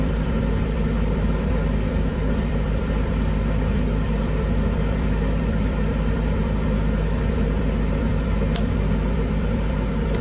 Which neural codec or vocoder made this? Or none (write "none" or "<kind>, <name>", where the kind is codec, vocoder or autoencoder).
vocoder, BigVGAN v2